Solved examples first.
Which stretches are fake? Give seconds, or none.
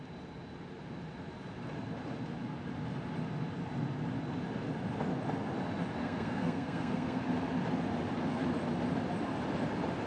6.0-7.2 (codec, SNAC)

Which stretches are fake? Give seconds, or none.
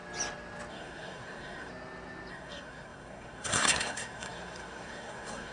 0.7-1.7 (codec, SNAC); 2.3-5.5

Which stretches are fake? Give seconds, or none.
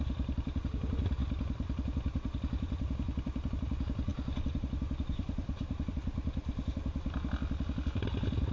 none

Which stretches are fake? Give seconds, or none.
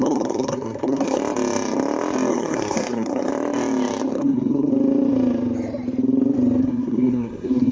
0.0-1.2 (codec, SNAC); 2.3-3.3; 4.1-4.7; 6.6-7.7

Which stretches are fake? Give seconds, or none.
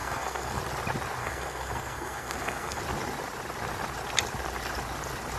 0.0-0.6 (codec, SNAC); 1.2-2.8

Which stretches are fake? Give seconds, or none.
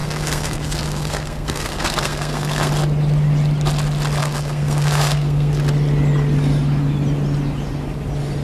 0.0-2.7 (codec, SNAC); 4.2-5.5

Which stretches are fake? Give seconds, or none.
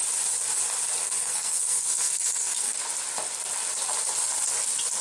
1.0-2.8 (codec, SNAC)